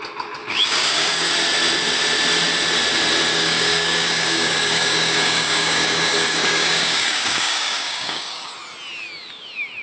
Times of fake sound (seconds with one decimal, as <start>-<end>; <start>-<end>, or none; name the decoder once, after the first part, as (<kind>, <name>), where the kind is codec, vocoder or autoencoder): 0.4-1.3 (codec, DAC); 3.3-8.5